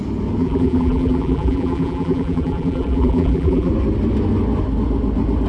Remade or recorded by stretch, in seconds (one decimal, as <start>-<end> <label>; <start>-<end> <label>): 0.0-0.4 recorded; 0.4-3.7 remade; 3.7-5.5 recorded